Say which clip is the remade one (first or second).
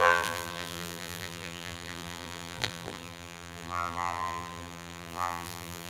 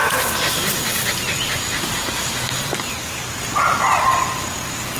first